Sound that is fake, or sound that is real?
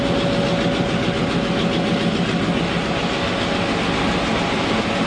real